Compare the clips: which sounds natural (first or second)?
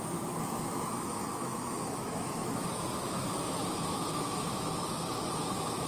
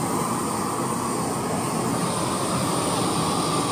second